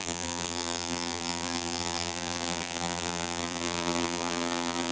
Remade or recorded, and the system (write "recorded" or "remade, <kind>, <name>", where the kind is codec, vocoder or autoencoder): remade, vocoder, BigVGAN v2